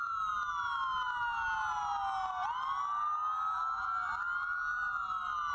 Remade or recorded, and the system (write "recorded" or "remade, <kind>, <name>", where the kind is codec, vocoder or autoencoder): recorded